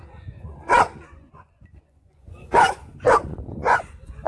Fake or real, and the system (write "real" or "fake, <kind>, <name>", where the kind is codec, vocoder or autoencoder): fake, vocoder, Vocos